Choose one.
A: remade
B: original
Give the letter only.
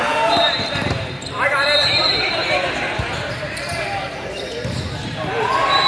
A